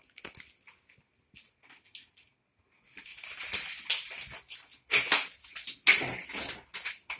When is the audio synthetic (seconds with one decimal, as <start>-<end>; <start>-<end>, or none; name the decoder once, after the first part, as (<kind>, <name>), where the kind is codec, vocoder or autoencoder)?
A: none